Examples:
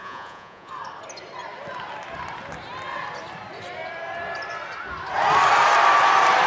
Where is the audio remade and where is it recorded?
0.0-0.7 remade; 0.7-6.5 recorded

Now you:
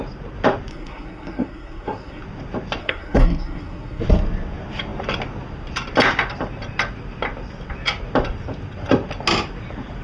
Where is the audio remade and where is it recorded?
0.0-0.7 recorded; 0.7-2.2 remade; 2.2-2.8 recorded; 2.8-4.0 remade; 4.0-10.0 recorded

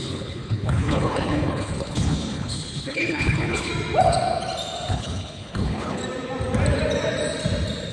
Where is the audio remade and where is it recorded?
0.0-3.7 remade; 3.7-4.9 recorded; 4.9-6.0 remade; 6.0-7.9 recorded

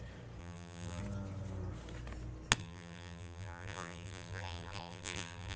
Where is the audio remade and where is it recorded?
0.0-0.4 recorded; 0.4-1.0 remade; 1.0-2.6 recorded; 2.6-5.6 remade

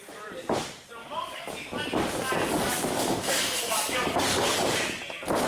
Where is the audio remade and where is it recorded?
0.0-1.0 recorded; 1.0-1.5 remade; 1.5-2.5 recorded; 2.5-5.0 remade; 5.0-5.5 recorded

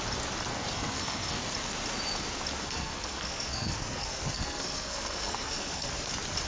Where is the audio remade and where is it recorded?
0.0-0.5 recorded; 0.5-1.4 remade; 1.4-2.6 recorded; 2.6-5.9 remade; 5.9-6.5 recorded

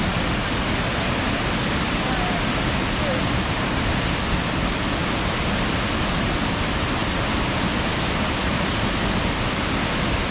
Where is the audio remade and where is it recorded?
0.0-10.3 recorded